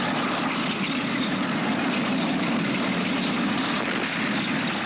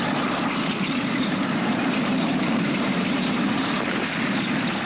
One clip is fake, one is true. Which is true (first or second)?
first